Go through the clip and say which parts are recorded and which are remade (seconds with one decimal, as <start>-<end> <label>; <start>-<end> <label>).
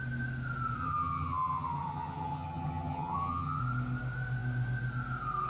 0.0-0.8 recorded; 0.8-3.6 remade; 3.6-5.5 recorded